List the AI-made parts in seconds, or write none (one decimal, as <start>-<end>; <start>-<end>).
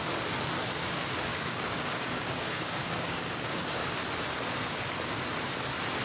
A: 1.3-3.9